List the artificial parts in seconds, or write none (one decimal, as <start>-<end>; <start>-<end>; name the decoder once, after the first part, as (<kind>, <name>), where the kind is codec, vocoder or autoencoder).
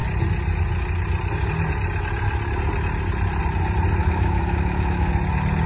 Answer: 4.0-5.1 (autoencoder, DAC-VAE)